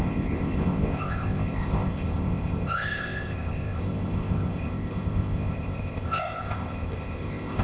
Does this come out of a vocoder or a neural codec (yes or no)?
yes